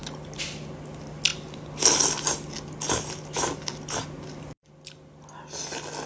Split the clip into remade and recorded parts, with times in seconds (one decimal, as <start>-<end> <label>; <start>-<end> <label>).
0.0-6.1 recorded